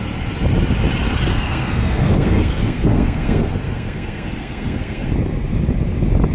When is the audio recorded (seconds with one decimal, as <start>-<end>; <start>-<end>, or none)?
0.0-1.3; 5.1-6.3